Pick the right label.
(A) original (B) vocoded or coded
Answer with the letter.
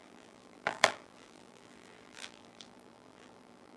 B